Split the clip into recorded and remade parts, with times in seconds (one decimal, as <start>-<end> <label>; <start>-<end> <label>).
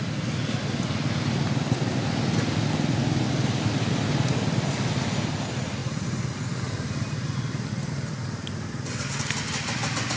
0.0-10.2 recorded